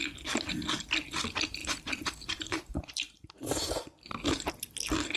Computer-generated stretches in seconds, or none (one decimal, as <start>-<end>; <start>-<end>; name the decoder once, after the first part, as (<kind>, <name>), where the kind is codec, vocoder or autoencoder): 1.6-4.5 (vocoder, BigVGAN v2)